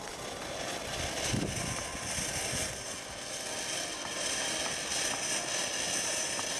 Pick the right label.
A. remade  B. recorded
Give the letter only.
B